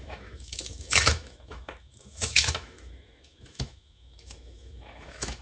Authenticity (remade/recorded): remade